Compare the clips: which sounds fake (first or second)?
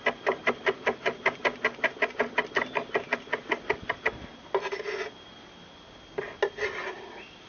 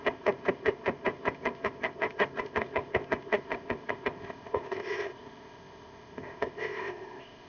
second